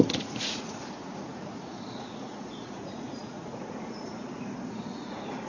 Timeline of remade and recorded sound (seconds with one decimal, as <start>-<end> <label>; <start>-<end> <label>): 0.0-5.5 remade